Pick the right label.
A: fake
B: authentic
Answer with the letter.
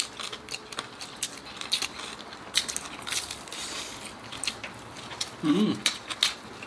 B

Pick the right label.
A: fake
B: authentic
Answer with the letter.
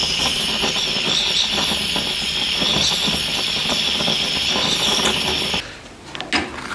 B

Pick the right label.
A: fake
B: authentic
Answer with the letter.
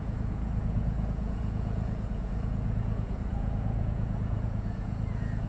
A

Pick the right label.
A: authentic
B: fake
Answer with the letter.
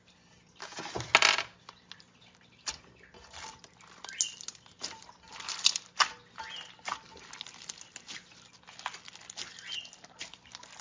A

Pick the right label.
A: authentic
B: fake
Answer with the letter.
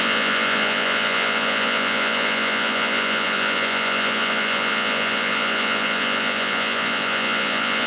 B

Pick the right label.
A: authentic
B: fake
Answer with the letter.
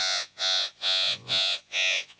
B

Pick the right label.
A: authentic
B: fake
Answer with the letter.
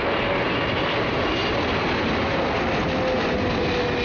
A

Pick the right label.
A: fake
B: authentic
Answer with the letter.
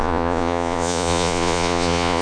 A